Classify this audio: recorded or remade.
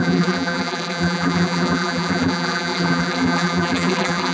remade